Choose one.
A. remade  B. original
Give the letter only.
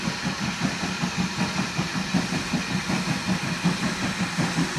B